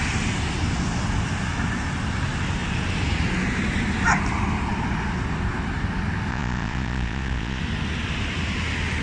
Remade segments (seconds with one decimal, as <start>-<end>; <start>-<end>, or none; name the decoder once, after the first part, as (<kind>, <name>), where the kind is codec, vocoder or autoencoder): 6.3-7.6 (vocoder, Vocos)